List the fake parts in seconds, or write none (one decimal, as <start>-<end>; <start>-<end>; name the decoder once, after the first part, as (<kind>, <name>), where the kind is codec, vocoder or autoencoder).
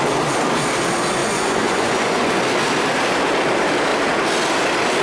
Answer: 1.2-2.4 (vocoder, Vocos)